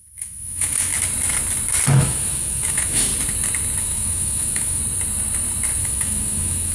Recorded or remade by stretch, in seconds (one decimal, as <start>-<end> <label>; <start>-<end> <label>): 0.0-0.9 remade; 0.9-2.0 recorded; 2.0-3.1 remade; 3.1-3.8 recorded; 3.8-4.8 remade; 4.8-5.8 recorded; 5.8-6.7 remade